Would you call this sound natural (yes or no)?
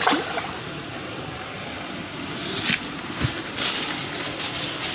yes